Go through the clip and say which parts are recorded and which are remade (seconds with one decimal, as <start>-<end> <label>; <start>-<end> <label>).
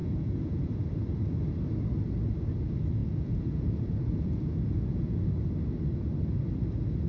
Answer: 0.0-0.7 remade; 0.7-3.0 recorded; 3.0-5.2 remade; 5.2-7.1 recorded